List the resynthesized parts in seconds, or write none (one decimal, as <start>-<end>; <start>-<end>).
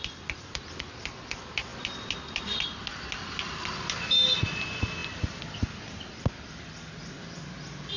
none